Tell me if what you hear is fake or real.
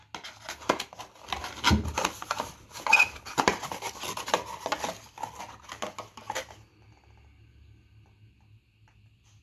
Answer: real